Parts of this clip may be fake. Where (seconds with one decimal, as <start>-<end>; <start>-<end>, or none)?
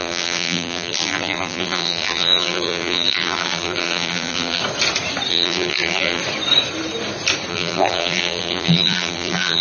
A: 0.0-4.6; 5.3-6.2; 7.5-9.6